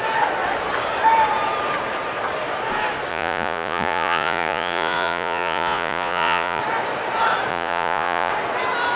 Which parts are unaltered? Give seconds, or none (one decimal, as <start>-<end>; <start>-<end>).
0.0-3.1; 6.6-7.5; 8.3-9.0